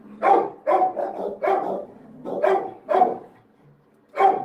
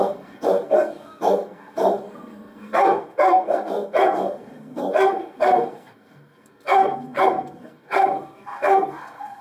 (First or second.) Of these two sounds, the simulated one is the second